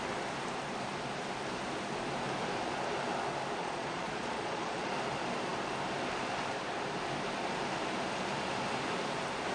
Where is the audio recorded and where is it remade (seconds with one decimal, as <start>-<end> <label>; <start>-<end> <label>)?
0.0-3.6 recorded; 3.6-4.9 remade; 4.9-9.5 recorded